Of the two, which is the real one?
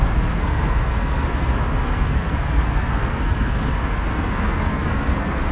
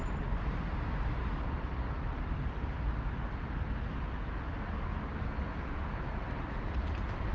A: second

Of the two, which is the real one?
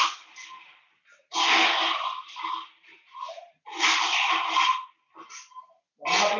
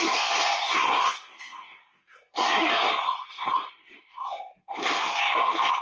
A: first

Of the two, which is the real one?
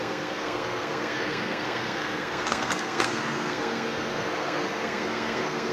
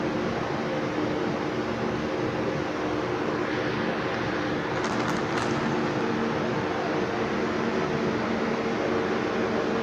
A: second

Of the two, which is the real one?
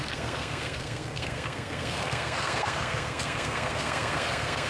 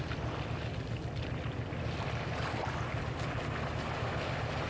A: second